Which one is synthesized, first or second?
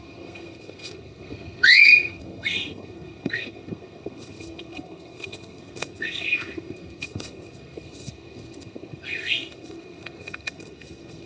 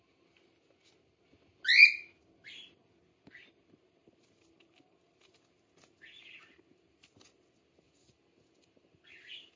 first